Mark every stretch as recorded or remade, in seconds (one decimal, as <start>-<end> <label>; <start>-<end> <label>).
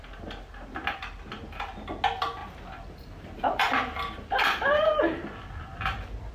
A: 0.0-2.4 recorded; 2.4-6.3 remade